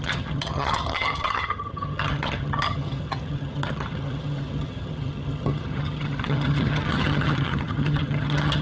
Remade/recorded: remade